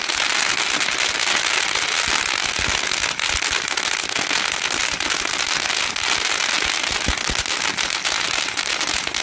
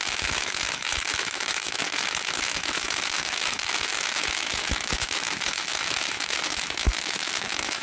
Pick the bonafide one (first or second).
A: first